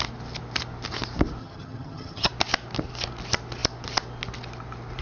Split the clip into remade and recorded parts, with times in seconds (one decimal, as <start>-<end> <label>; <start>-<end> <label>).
0.0-1.4 recorded; 1.4-2.3 remade; 2.3-5.0 recorded